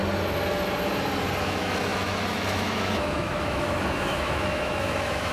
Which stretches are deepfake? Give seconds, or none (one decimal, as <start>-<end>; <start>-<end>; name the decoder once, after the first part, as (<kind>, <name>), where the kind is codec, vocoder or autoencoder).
1.4-5.3 (autoencoder, DAC-VAE)